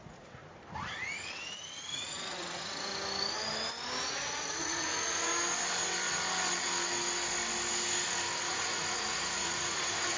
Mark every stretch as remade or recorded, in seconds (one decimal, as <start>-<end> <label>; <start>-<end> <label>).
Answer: 0.0-0.4 remade; 0.4-1.8 recorded; 1.8-2.9 remade; 2.9-4.1 recorded; 4.1-5.3 remade; 5.3-8.4 recorded; 8.4-10.2 remade